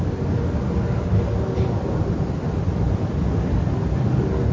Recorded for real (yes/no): yes